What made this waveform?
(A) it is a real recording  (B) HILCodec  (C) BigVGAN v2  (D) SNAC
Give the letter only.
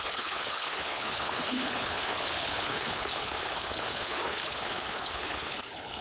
B